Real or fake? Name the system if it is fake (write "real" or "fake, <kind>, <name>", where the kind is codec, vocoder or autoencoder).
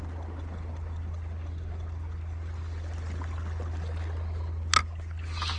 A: real